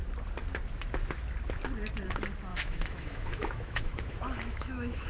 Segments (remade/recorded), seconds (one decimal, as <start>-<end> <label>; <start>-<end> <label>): 0.0-2.5 recorded; 2.5-5.1 remade